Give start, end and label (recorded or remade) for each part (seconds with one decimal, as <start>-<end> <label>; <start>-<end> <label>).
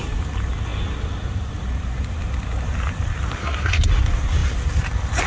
0.0-3.4 recorded; 3.4-3.9 remade; 3.9-5.3 recorded